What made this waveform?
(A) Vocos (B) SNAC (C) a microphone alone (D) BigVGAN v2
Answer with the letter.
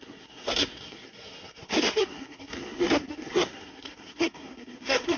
B